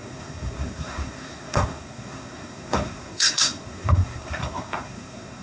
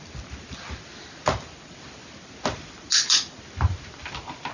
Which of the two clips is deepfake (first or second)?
first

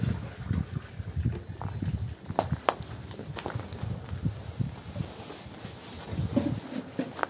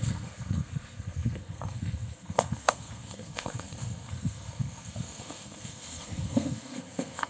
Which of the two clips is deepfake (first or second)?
second